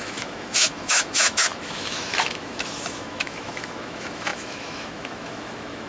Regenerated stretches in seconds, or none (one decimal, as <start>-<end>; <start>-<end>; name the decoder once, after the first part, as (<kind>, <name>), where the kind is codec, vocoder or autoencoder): 0.0-5.9 (autoencoder, DAC-VAE)